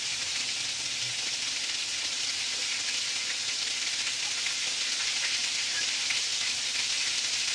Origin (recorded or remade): recorded